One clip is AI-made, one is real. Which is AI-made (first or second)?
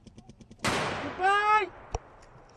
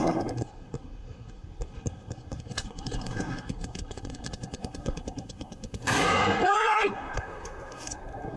second